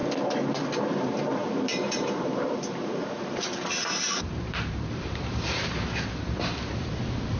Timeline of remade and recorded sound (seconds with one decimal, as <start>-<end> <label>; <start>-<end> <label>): 0.0-0.8 recorded; 0.8-7.4 remade